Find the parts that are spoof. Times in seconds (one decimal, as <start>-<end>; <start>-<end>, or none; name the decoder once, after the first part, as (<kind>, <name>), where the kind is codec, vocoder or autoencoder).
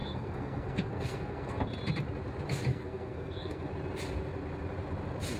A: 0.0-1.6 (codec, SNAC); 2.7-3.7